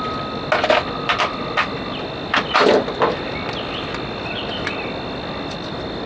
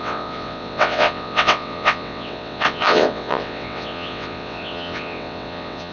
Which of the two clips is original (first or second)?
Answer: first